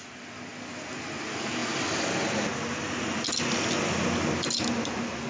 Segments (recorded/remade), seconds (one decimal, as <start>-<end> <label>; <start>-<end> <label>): 0.0-5.3 recorded